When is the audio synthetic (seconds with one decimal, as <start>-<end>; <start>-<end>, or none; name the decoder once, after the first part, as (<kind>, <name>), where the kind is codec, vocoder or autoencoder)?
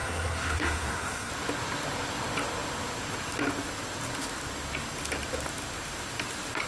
0.0-1.3 (codec, SNAC)